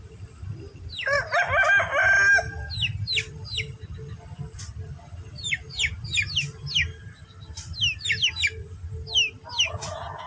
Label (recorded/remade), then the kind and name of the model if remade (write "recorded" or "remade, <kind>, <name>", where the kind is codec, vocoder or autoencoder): recorded